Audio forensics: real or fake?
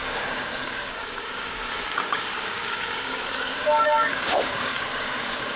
fake